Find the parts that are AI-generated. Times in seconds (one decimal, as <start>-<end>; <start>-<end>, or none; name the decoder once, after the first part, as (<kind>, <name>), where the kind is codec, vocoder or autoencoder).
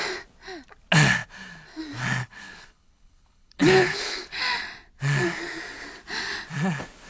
2.2-4.3 (codec, HILCodec)